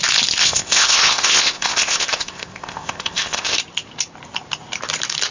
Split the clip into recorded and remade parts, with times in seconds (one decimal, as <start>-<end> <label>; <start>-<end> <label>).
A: 0.0-0.4 recorded; 0.4-3.6 remade; 3.6-5.3 recorded